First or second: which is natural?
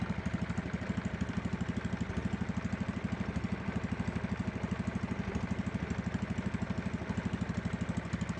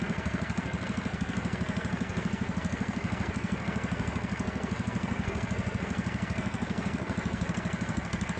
first